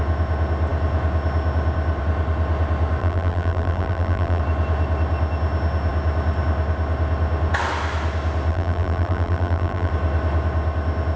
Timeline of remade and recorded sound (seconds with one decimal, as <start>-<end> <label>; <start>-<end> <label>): 0.0-3.0 recorded; 3.0-4.4 remade; 4.4-8.5 recorded; 8.5-9.9 remade; 9.9-11.2 recorded